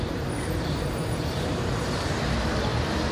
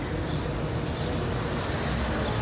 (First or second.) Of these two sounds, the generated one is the first